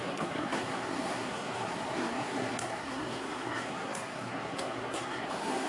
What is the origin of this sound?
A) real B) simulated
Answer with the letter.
B